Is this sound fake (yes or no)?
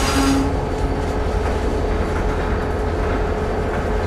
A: no